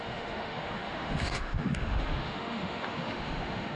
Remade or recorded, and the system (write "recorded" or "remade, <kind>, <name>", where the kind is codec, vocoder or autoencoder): remade, autoencoder, DAC-VAE